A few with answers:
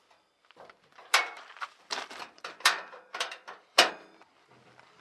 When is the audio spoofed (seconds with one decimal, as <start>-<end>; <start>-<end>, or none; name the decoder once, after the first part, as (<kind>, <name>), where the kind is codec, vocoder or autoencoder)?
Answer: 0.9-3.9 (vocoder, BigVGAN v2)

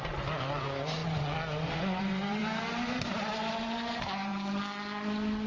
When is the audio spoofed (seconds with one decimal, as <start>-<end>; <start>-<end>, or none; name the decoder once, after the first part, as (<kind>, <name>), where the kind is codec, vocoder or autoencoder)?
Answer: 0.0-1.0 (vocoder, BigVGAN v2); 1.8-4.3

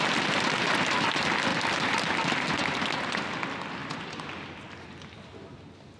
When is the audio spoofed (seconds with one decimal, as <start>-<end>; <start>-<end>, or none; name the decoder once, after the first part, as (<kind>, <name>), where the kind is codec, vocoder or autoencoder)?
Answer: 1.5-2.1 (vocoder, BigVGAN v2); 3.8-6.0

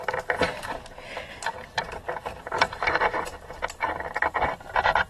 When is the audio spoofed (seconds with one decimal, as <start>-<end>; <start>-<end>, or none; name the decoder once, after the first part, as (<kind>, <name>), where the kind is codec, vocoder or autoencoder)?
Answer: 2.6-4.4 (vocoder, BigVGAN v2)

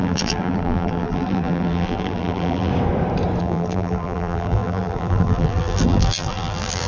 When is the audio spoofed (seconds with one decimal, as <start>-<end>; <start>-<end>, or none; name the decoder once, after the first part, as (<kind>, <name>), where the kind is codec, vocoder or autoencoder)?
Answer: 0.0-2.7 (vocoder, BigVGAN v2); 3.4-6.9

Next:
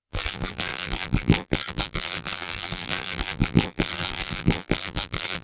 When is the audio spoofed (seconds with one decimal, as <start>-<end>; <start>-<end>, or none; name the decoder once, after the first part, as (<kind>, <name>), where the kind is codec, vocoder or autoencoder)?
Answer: 0.0-5.4 (vocoder, BigVGAN v2)